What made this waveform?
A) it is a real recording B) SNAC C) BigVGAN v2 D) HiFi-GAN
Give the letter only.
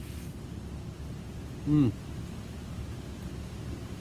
A